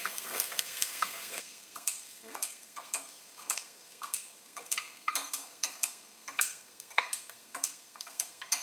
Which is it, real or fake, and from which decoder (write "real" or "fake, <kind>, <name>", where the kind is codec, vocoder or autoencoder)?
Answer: fake, codec, SNAC